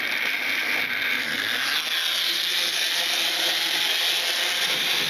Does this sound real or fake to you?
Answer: real